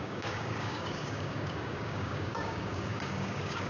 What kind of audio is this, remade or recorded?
remade